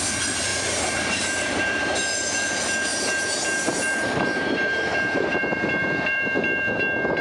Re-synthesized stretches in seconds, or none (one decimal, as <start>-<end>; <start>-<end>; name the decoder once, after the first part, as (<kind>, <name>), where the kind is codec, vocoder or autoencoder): 0.5-2.5 (vocoder, BigVGAN v2); 2.9-6.8